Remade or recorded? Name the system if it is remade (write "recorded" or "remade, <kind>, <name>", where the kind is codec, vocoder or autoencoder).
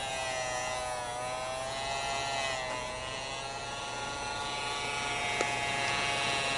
recorded